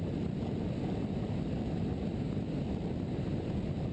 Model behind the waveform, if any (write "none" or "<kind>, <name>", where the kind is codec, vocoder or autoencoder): none